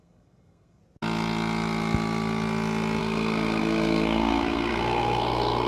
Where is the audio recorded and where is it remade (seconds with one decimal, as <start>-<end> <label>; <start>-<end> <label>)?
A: 0.0-0.8 remade; 0.8-3.0 recorded; 3.0-5.7 remade